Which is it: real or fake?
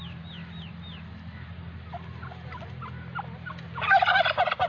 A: real